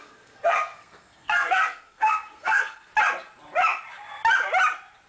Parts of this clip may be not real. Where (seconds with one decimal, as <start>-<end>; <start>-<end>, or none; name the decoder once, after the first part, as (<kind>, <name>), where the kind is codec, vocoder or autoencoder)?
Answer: 0.0-2.9 (codec, SNAC)